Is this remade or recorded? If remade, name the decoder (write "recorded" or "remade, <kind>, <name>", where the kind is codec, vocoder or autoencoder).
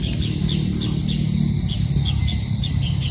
recorded